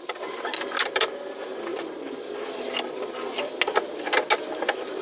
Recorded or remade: recorded